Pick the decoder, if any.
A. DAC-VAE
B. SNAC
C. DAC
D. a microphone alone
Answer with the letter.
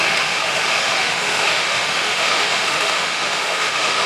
A